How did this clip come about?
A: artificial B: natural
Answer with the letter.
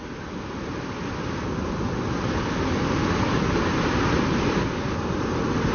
B